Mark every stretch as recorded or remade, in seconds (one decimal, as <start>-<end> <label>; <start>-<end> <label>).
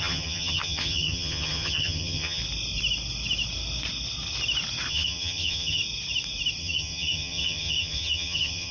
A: 0.0-2.4 remade; 2.4-4.9 recorded; 4.9-5.8 remade; 5.8-6.6 recorded; 6.6-8.7 remade